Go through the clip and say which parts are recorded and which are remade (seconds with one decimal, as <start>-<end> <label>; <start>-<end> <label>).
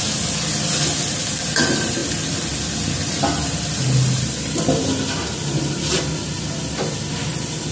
0.0-7.7 recorded